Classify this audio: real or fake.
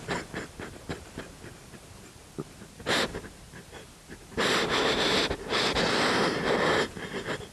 real